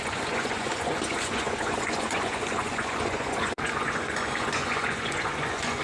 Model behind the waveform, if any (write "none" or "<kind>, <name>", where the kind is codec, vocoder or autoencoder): vocoder, Vocos